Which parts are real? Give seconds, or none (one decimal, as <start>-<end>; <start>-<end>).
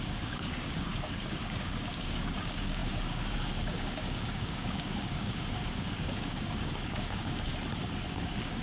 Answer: 7.5-8.2